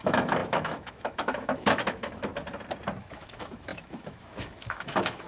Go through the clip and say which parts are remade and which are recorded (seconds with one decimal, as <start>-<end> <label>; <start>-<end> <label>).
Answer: 0.0-2.3 remade; 2.3-3.0 recorded; 3.0-5.3 remade